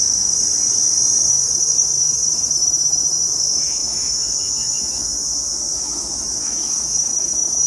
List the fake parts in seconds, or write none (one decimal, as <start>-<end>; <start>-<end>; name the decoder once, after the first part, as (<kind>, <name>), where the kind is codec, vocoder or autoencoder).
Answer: 0.0-0.4 (autoencoder, DAC-VAE); 1.3-7.7

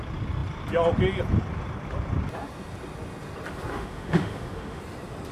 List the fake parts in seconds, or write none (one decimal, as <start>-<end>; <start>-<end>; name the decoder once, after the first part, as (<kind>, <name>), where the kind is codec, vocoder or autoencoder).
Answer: 3.7-4.8 (autoencoder, DAC-VAE)

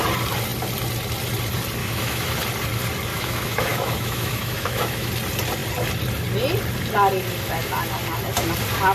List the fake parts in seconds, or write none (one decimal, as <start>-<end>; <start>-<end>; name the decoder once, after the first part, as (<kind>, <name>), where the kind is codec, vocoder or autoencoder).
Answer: 1.8-2.4 (autoencoder, DAC-VAE); 3.1-5.1

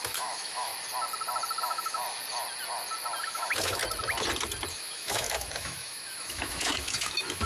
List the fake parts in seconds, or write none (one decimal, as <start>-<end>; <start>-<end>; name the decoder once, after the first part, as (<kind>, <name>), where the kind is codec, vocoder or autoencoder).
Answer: 0.0-0.7 (autoencoder, DAC-VAE); 1.6-2.0; 3.2-3.8; 4.7-7.5